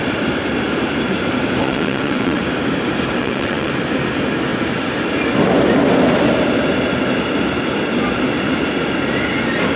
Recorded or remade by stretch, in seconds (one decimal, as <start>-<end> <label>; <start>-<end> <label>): 0.0-1.6 recorded; 1.6-2.4 remade; 2.4-3.2 recorded; 3.2-3.7 remade; 3.7-9.8 recorded